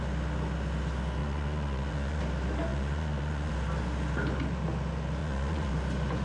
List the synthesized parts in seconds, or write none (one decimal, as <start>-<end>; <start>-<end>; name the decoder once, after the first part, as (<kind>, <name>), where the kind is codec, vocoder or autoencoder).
1.2-2.2 (vocoder, Vocos); 2.7-3.5; 5.2-5.7